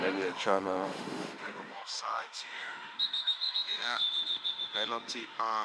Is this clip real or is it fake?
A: fake